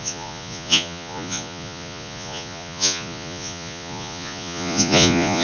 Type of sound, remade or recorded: remade